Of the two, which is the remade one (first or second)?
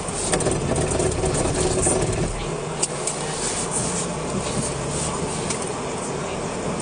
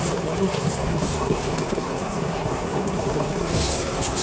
second